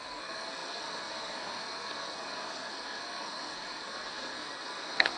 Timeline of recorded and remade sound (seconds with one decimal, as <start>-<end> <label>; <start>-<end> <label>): 0.0-5.2 remade